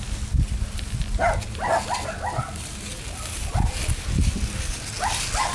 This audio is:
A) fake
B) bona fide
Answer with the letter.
B